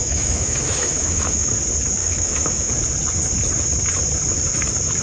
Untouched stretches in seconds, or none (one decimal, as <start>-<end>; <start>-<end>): 1.5-2.0; 2.7-5.0